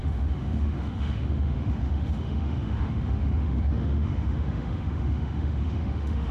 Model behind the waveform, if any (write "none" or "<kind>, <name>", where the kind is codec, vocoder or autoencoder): autoencoder, DAC-VAE